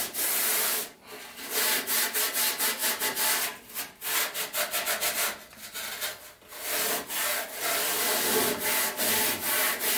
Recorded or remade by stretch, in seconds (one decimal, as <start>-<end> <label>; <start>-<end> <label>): 0.0-10.0 recorded